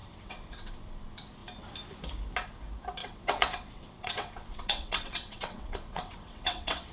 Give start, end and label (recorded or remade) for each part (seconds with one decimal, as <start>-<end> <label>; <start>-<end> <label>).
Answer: 0.0-0.7 remade; 0.7-3.0 recorded; 3.0-6.9 remade